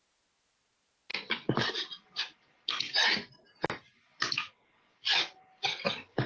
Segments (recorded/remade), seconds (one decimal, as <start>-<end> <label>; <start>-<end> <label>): 0.0-6.3 recorded